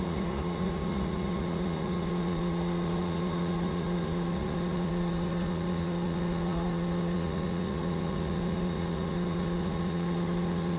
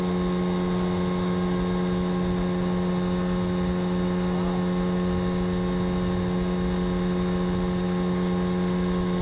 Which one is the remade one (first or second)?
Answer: first